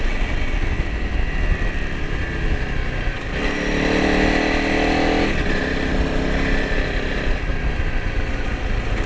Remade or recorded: recorded